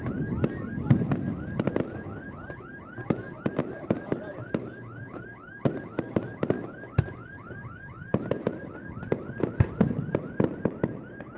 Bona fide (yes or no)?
yes